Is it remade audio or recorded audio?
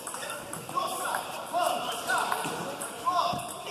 remade